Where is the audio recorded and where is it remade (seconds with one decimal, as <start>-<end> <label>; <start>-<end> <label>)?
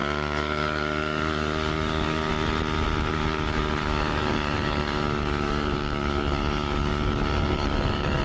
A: 0.0-2.3 remade; 2.3-3.1 recorded; 3.1-8.2 remade